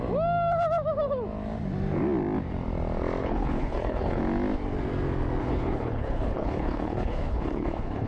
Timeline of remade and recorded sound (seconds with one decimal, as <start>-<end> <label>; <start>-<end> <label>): 0.0-3.2 recorded; 3.2-4.2 remade; 4.2-5.4 recorded; 5.4-8.1 remade